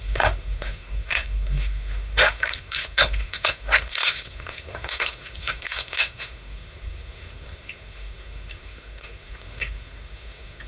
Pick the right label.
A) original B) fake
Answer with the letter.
B